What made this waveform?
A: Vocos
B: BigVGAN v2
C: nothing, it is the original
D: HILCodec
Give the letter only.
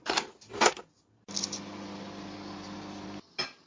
C